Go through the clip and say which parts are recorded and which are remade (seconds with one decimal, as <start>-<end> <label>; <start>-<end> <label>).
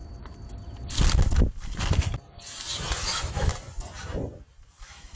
0.0-3.1 recorded; 3.1-3.5 remade; 3.5-4.8 recorded; 4.8-5.2 remade